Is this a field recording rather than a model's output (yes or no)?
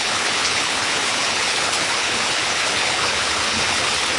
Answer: no